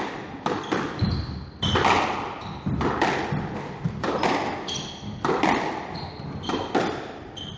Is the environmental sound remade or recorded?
recorded